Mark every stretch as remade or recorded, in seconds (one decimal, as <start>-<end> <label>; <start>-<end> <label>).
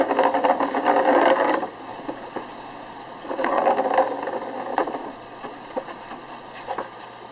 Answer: 0.0-1.9 recorded; 1.9-3.6 remade; 3.6-4.7 recorded; 4.7-6.7 remade; 6.7-7.3 recorded